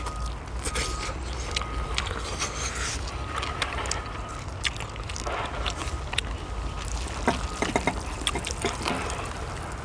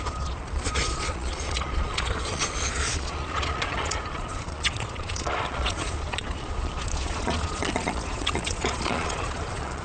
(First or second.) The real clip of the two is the first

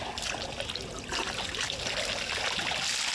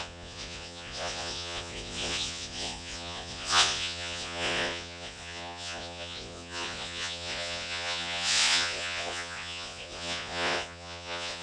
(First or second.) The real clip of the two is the first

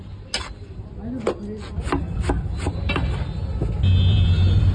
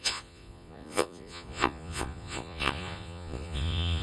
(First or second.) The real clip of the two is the first